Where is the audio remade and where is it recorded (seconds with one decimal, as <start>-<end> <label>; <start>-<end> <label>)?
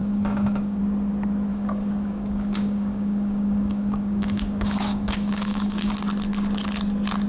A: 0.0-0.8 remade; 0.8-1.5 recorded; 1.5-5.9 remade; 5.9-7.3 recorded